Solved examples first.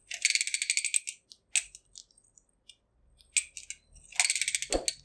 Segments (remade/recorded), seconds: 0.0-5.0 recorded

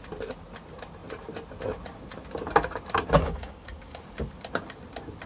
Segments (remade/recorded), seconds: 0.0-3.2 recorded; 3.2-4.0 remade; 4.0-5.3 recorded

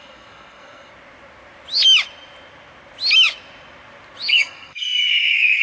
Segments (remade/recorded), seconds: 0.0-0.9 remade; 0.9-4.3 recorded; 4.3-5.6 remade

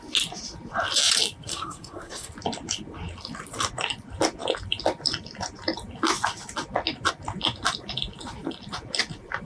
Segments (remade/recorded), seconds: 0.0-1.5 recorded; 1.5-2.3 remade; 2.3-9.5 recorded

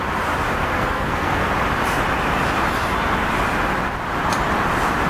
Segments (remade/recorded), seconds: 0.0-0.6 recorded; 0.6-1.5 remade; 1.5-5.1 recorded

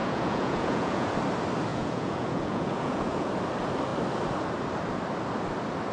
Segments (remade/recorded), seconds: 0.0-1.1 remade; 1.1-1.7 recorded; 1.7-3.3 remade; 3.3-5.9 recorded